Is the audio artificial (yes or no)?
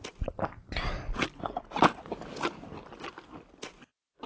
no